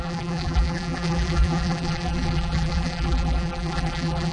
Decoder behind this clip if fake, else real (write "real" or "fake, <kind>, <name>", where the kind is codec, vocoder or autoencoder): fake, vocoder, BigVGAN v2